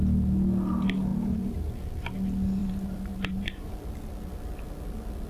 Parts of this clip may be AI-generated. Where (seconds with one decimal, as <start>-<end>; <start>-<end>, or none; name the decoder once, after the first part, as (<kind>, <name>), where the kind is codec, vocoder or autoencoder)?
1.1-1.7 (vocoder, BigVGAN v2); 2.6-3.7